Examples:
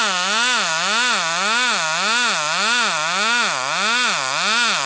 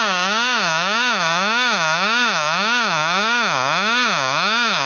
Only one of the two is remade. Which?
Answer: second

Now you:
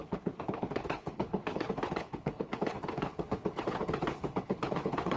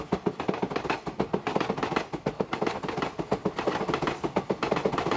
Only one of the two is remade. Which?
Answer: first